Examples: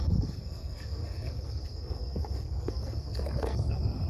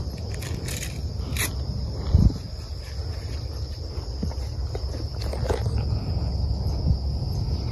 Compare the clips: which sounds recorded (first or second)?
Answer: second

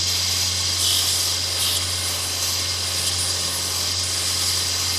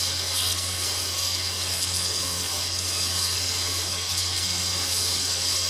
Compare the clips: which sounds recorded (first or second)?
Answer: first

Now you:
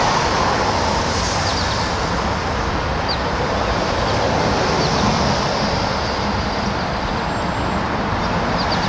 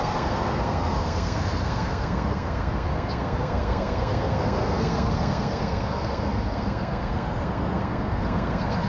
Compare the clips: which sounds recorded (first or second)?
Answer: first